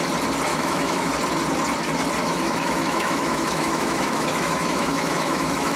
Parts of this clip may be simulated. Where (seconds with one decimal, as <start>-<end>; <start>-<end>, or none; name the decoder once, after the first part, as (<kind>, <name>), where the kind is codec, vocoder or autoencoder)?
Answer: 0.5-1.1 (autoencoder, DAC-VAE); 2.2-5.8